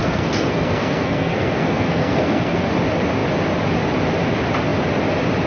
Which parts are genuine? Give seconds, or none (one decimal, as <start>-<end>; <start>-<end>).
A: 2.7-5.5